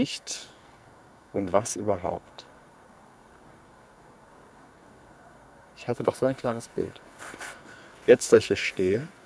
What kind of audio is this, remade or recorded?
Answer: remade